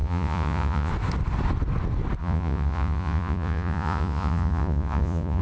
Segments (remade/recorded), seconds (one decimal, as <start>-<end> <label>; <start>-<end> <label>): 0.0-0.9 remade; 0.9-2.2 recorded; 2.2-5.4 remade